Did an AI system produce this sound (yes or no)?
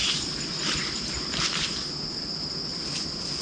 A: no